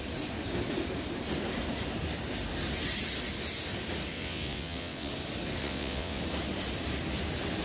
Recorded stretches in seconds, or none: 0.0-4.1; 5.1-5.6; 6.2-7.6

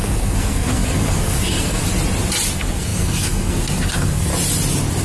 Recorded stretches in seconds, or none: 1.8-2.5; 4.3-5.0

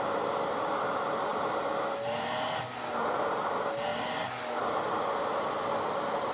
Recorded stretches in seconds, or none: 0.0-6.3

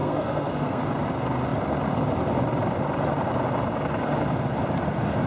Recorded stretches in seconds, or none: 0.8-5.3

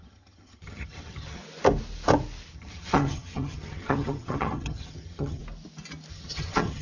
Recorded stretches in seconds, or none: 1.4-2.5; 5.4-6.1

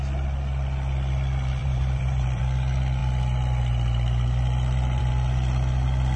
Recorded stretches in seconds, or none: 0.0-1.6; 2.4-6.2

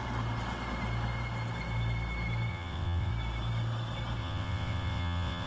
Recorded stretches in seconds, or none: 0.0-2.5; 3.1-4.2

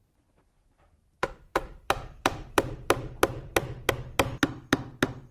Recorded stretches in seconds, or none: 0.0-1.0; 3.9-5.3